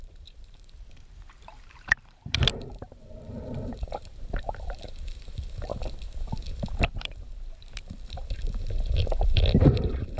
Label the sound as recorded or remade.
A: remade